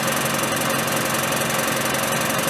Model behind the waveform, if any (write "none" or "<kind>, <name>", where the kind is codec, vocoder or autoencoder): none